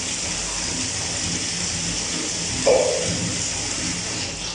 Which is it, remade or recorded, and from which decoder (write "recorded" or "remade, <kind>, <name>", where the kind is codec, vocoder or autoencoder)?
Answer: recorded